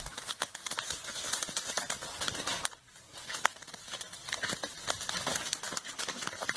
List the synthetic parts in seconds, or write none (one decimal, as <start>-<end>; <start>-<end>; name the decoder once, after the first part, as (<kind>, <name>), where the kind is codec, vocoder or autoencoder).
none